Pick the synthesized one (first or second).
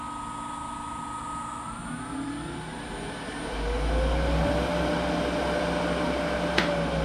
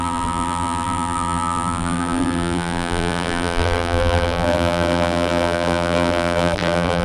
second